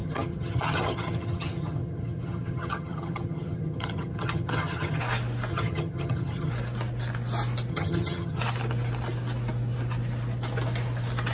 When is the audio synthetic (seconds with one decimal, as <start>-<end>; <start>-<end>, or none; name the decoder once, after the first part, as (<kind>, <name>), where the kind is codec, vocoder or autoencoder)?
0.0-5.0 (vocoder, HiFi-GAN); 5.5-6.5; 7.7-8.4